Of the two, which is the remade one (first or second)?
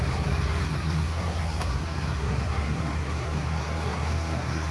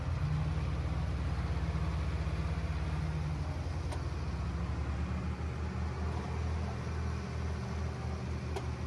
first